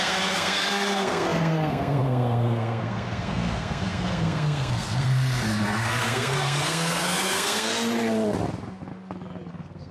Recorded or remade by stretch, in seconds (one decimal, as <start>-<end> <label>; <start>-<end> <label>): 0.0-7.7 remade; 7.7-9.5 recorded; 9.5-9.9 remade